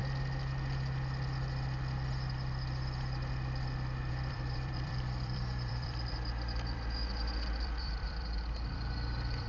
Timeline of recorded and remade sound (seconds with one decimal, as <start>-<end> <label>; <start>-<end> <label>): 0.0-4.1 recorded; 4.1-9.5 remade